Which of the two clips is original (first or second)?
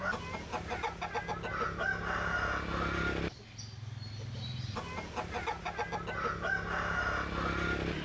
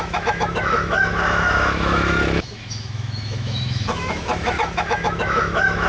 first